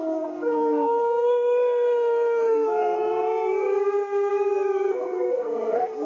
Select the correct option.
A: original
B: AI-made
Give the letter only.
B